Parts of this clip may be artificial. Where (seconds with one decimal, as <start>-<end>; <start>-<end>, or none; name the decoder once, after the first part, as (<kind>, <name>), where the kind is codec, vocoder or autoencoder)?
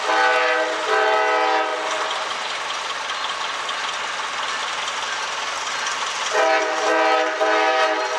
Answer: none